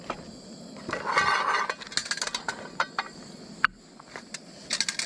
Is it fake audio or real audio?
real